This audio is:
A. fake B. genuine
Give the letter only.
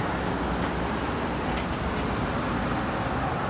B